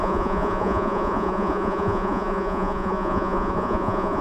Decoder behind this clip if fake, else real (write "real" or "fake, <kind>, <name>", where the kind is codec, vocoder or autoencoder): fake, vocoder, Vocos